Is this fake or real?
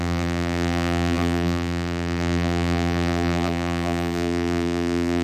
fake